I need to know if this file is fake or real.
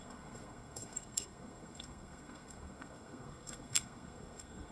fake